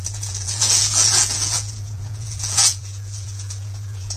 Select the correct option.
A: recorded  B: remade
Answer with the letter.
B